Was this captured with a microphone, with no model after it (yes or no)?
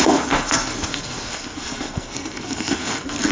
no